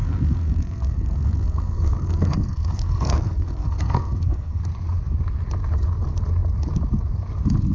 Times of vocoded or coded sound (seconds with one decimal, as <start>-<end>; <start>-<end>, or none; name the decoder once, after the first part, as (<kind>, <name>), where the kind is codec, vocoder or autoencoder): 0.0-4.6 (codec, SNAC)